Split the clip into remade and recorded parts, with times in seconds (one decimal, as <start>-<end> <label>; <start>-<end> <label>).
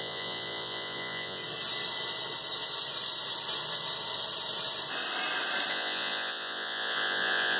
0.0-1.4 remade; 1.4-5.7 recorded; 5.7-7.6 remade